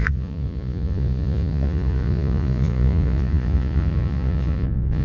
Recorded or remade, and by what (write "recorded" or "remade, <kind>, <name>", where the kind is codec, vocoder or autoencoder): remade, vocoder, Vocos